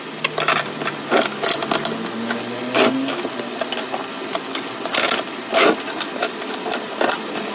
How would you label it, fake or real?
real